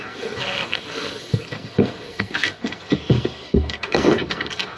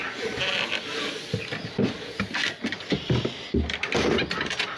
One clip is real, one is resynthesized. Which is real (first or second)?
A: second